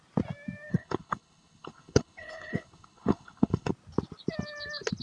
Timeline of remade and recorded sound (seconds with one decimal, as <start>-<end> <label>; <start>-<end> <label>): 0.0-0.7 recorded; 0.7-3.7 remade; 3.7-5.0 recorded